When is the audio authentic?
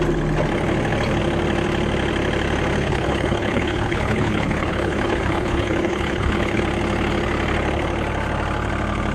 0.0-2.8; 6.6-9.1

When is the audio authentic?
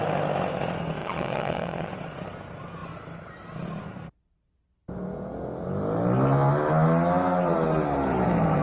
0.0-1.0; 1.9-8.6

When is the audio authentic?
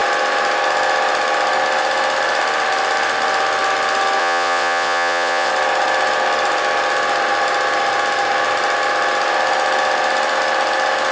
0.0-4.2; 5.5-11.1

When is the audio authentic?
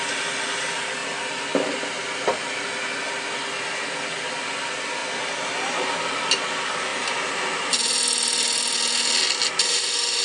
0.0-10.2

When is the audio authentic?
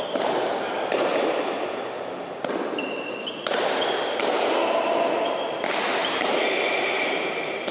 0.0-7.7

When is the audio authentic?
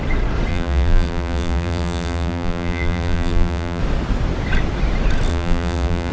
0.0-0.5; 3.8-5.3